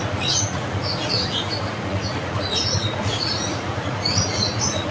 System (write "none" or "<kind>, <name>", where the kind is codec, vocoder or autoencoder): vocoder, Vocos